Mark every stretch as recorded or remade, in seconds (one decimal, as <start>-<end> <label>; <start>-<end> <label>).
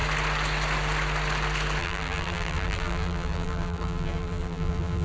0.0-1.8 recorded; 1.8-5.0 remade